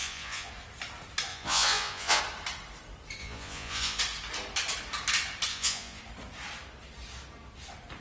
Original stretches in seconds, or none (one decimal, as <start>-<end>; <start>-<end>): 0.5-1.3; 2.2-3.2; 4.0-5.5; 6.0-8.0